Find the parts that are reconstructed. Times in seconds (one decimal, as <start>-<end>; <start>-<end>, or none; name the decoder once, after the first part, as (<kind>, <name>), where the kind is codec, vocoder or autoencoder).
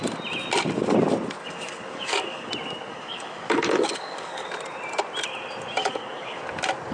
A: 1.4-2.5 (codec, DAC); 2.9-4.5; 5.8-6.4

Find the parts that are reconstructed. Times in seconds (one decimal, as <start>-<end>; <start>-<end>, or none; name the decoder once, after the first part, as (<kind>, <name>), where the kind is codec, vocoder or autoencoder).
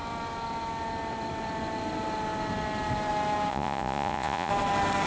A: 3.5-4.5 (vocoder, Vocos)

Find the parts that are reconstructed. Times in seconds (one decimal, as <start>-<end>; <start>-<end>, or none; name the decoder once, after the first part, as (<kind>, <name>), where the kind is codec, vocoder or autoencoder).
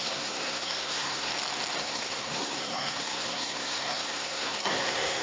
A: 0.0-1.3 (codec, SNAC); 1.8-5.2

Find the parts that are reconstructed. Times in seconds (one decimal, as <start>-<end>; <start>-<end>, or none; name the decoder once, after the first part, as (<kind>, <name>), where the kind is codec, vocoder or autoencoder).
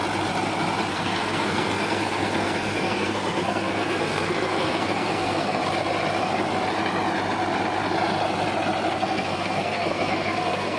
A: 0.9-5.6 (codec, SNAC); 8.9-10.8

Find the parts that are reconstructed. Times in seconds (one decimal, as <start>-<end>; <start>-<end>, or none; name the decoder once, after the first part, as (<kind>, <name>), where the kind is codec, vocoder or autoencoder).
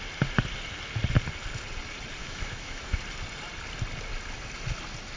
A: 2.2-3.0 (autoencoder, DAC-VAE)